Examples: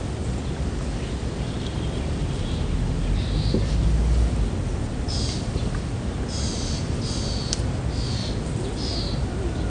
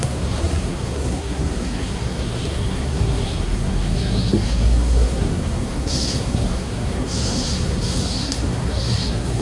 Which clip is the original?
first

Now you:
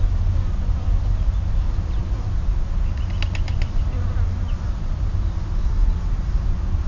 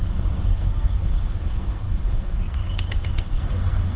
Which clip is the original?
first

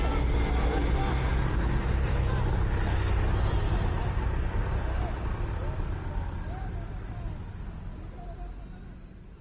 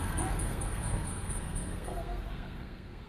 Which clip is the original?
first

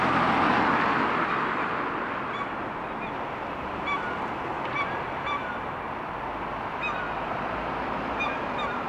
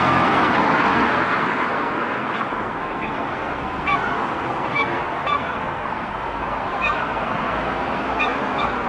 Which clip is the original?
first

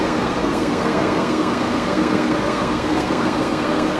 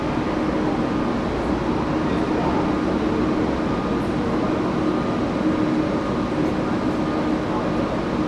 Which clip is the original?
second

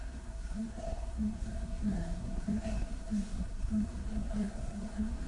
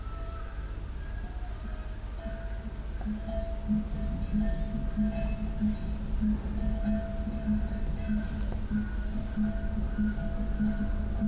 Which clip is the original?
second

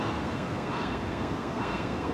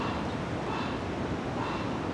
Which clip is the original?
second